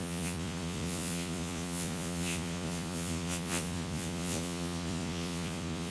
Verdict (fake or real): fake